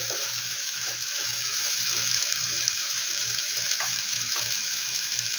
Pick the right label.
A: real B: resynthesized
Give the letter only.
B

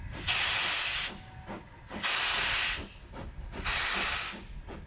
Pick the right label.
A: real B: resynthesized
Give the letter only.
A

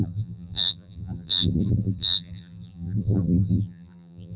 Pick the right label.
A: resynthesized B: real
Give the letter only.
A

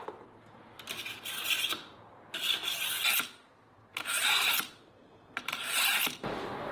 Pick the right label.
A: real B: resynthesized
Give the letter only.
A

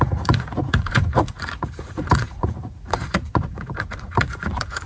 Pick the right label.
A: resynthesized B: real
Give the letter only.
A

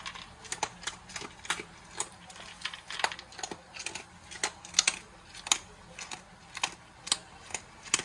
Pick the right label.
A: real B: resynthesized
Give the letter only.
A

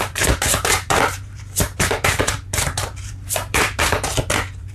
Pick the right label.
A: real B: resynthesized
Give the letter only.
B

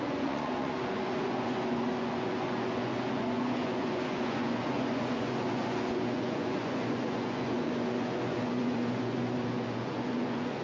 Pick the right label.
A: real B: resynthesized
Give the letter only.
B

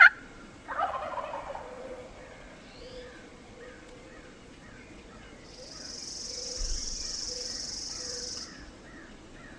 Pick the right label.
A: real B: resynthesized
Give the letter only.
B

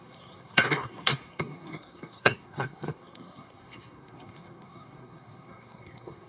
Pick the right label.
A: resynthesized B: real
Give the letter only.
A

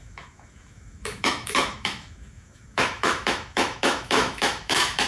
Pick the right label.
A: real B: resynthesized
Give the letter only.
B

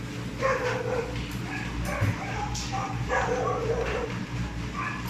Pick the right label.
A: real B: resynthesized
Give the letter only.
B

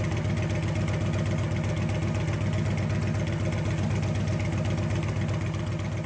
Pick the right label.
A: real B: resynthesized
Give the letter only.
A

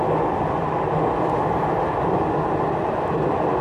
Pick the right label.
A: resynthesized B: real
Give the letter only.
A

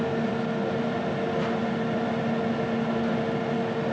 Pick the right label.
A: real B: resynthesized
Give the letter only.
A